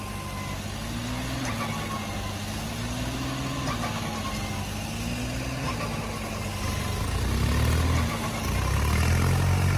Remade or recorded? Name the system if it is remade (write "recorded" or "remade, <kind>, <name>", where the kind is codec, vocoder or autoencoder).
recorded